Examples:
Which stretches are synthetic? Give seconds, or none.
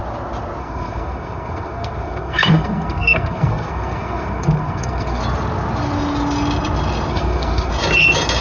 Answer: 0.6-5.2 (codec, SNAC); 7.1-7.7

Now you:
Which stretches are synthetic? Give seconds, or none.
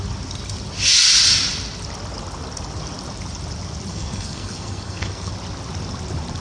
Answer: 3.9-5.3 (codec, SNAC)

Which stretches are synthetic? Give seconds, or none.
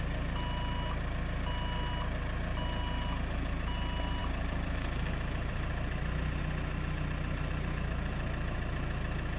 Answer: none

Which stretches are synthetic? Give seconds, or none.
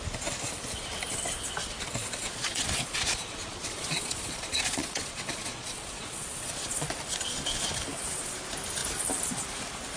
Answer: 2.0-6.9 (vocoder, Vocos)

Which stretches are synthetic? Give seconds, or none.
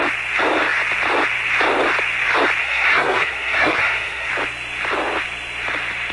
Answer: 2.6-4.3 (codec, SNAC)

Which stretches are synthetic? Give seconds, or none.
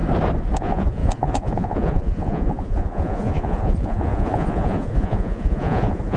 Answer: 0.6-6.2 (vocoder, Vocos)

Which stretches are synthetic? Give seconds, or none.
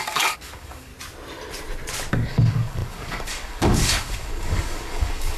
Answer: 0.0-0.9 (codec, DAC); 2.1-5.4